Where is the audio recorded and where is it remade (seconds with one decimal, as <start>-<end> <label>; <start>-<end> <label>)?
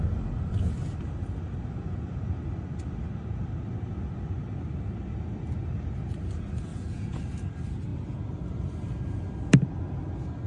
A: 0.0-6.7 recorded; 6.7-7.2 remade; 7.2-10.5 recorded